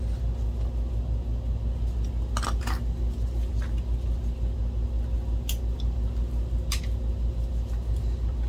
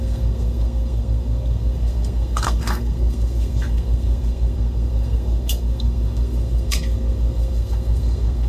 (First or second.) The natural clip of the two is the first